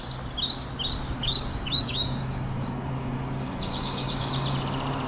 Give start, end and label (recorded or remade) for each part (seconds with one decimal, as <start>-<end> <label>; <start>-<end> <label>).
0.0-1.2 recorded; 1.2-4.3 remade; 4.3-5.1 recorded